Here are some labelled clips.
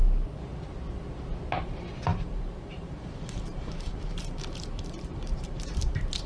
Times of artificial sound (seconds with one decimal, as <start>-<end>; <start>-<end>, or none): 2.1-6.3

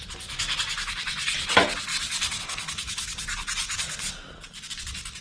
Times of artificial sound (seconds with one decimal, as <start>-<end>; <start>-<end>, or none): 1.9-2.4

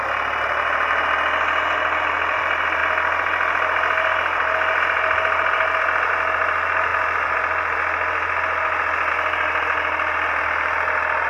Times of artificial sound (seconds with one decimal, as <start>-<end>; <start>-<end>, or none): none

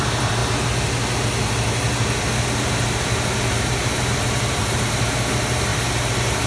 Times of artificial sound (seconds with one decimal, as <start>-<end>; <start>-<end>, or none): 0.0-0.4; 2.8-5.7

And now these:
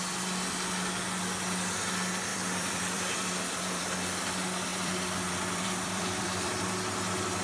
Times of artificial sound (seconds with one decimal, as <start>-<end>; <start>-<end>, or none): 2.3-3.9; 4.7-6.6

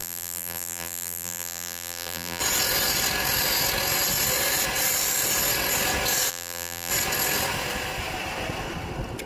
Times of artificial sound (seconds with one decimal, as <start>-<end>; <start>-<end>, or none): 0.0-2.4; 6.3-6.9